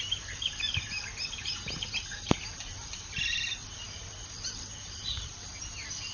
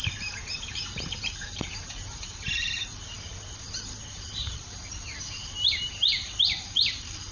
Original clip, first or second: first